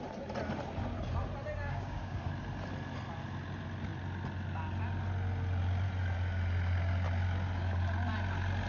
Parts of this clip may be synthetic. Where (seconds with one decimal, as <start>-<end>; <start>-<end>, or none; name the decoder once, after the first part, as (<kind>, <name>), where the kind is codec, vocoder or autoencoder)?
1.6-2.3 (codec, DAC)